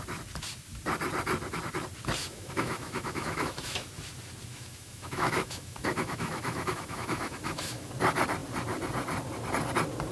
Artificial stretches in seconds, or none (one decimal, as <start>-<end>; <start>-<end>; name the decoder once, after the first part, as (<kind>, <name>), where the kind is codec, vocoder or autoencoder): 2.2-3.9 (autoencoder, DAC-VAE); 4.5-7.9